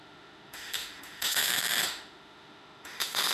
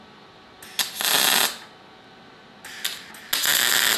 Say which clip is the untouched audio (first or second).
second